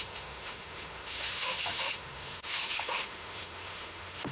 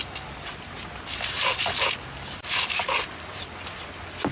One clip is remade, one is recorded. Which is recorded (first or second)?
second